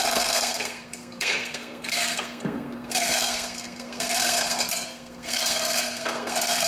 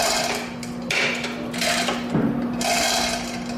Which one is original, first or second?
second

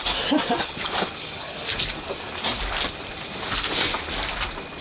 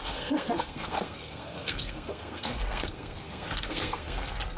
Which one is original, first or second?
first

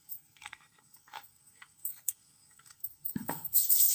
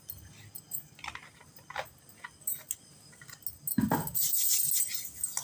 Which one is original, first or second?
second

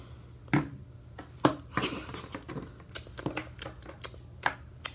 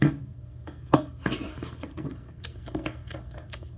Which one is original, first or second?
first